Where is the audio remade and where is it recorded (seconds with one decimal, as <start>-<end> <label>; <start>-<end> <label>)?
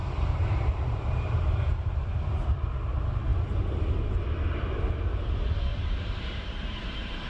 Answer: 0.0-1.1 remade; 1.1-3.3 recorded; 3.3-4.1 remade; 4.1-5.7 recorded; 5.7-7.3 remade